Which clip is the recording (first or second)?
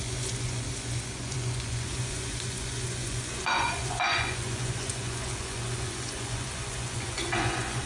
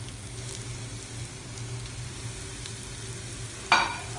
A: second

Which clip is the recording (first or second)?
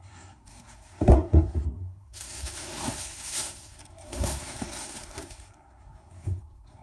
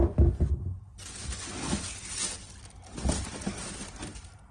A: second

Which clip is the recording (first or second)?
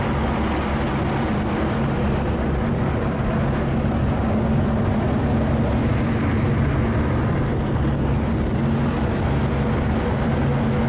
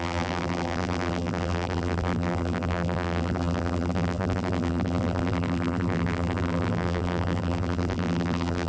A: first